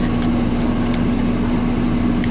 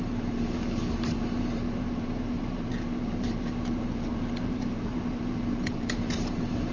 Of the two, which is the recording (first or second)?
first